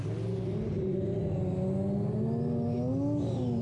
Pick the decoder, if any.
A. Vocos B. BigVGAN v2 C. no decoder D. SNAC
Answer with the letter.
C